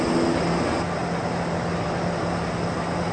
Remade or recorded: recorded